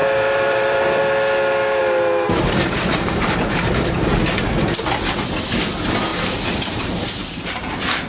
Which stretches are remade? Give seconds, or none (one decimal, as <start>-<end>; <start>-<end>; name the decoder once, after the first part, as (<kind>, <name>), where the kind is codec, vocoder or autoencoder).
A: 0.0-1.0 (vocoder, BigVGAN v2); 1.8-4.2; 6.1-8.1